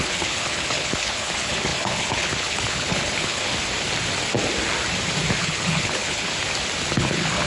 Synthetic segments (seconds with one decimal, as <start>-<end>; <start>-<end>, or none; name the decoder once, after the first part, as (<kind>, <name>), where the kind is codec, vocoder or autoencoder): 0.0-3.5 (codec, HILCodec); 5.4-6.3; 6.9-7.5